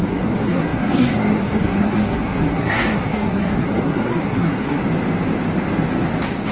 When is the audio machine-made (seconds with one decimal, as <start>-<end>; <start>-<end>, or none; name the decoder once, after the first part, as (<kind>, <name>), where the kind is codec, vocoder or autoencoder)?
0.0-4.8 (codec, SNAC)